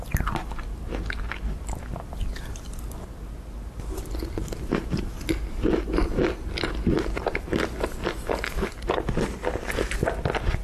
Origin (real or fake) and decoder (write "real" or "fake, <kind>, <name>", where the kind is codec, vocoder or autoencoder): real